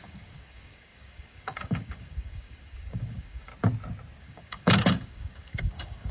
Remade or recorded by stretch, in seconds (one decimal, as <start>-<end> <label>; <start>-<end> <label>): 0.0-3.5 remade; 3.5-4.2 recorded; 4.2-6.1 remade